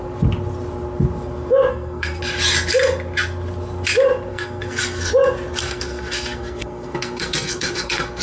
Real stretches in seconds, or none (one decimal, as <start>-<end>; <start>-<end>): 0.0-1.7; 2.2-4.3; 5.1-5.6